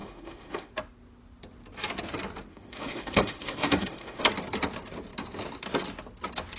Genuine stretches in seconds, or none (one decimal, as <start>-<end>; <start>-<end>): 0.7-2.5; 4.2-6.6